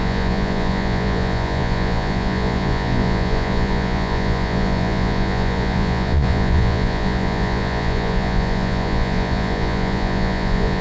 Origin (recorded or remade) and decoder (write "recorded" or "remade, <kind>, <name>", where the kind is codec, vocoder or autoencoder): remade, vocoder, Vocos